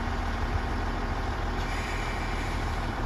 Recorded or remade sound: remade